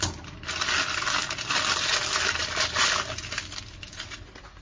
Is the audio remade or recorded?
recorded